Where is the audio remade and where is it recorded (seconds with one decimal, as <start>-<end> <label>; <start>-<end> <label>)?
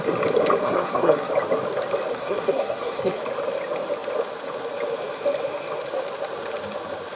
0.0-0.6 recorded; 0.6-1.3 remade; 1.3-2.1 recorded; 2.1-3.2 remade; 3.2-7.2 recorded